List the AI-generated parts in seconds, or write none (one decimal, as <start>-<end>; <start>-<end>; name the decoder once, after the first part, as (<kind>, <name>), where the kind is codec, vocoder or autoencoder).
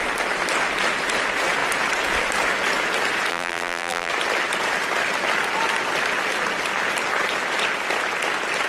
3.3-4.1 (vocoder, BigVGAN v2)